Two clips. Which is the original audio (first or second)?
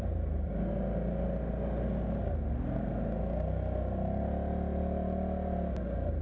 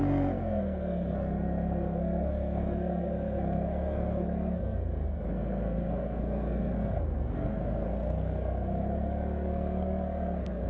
first